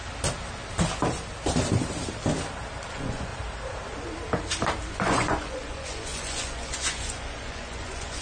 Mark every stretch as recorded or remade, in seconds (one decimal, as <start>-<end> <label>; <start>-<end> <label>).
0.0-2.9 recorded; 2.9-3.3 remade; 3.3-4.9 recorded; 4.9-8.2 remade